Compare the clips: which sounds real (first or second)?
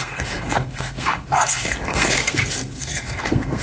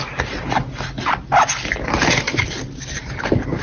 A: second